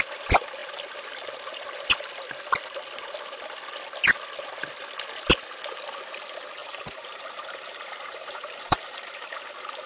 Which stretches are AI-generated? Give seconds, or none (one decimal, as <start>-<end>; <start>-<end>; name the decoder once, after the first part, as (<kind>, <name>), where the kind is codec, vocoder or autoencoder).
6.6-9.4 (vocoder, BigVGAN v2)